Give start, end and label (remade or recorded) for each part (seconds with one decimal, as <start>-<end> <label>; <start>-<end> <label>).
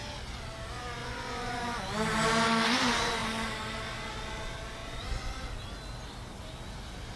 0.0-1.0 recorded; 1.0-1.8 remade; 1.8-4.8 recorded; 4.8-5.4 remade; 5.4-7.2 recorded